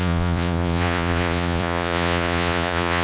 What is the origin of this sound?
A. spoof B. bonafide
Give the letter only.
A